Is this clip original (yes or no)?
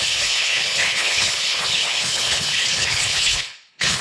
no